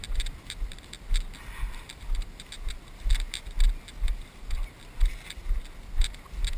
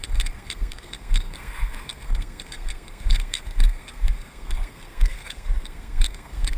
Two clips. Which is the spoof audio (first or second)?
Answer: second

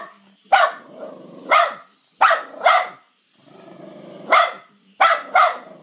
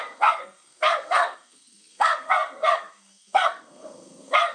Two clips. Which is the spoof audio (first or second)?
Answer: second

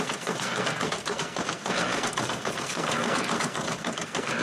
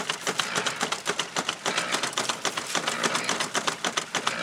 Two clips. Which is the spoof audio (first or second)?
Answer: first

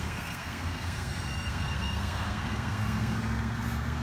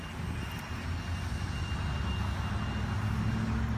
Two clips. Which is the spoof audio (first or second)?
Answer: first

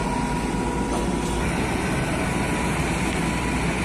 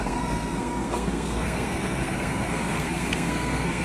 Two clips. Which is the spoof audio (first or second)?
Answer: second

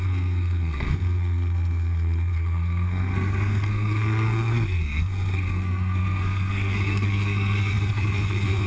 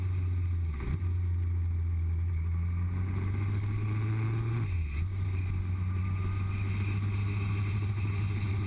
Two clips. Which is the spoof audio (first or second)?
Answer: first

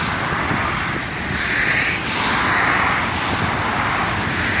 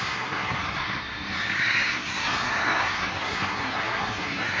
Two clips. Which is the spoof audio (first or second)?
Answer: second